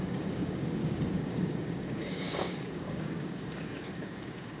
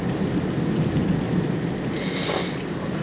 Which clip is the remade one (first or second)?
first